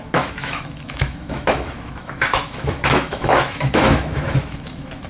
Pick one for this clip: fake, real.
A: fake